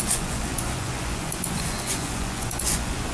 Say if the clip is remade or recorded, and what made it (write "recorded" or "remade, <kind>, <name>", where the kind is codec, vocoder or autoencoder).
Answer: remade, vocoder, Vocos